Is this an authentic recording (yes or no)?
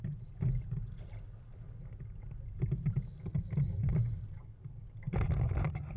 yes